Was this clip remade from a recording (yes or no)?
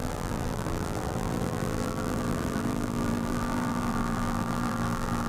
yes